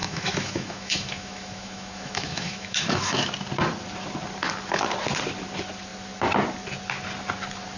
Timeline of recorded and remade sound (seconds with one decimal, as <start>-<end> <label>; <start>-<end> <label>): 0.0-3.3 remade; 3.3-7.8 recorded